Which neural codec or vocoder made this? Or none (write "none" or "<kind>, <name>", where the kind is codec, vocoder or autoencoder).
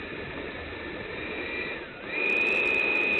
none